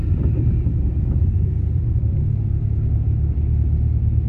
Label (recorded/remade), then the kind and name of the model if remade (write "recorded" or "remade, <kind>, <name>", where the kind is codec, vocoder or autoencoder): recorded